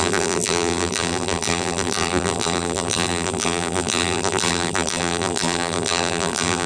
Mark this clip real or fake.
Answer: fake